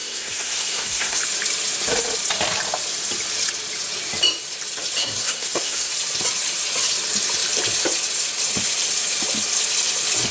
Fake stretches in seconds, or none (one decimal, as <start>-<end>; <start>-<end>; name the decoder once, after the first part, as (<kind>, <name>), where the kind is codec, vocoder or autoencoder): 0.0-1.2 (codec, SNAC); 5.0-5.9